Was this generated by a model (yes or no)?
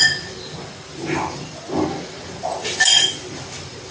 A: yes